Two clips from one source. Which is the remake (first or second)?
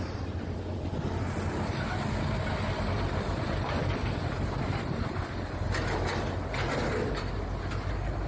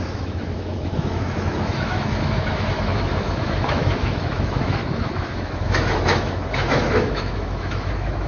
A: second